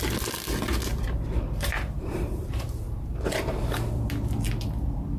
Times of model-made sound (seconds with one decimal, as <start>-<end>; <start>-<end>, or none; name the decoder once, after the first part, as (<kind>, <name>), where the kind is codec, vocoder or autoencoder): 0.9-4.0 (vocoder, BigVGAN v2)